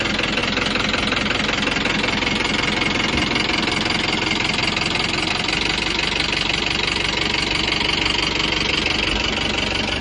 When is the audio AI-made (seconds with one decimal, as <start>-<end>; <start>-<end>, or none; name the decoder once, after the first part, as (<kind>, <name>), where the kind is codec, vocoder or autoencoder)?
none